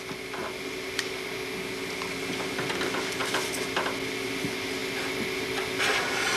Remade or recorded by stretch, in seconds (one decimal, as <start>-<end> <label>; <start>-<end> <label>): 0.0-6.4 recorded